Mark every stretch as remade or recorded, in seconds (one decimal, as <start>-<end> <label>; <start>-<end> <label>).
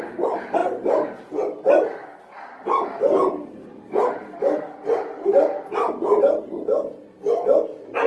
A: 0.0-8.1 recorded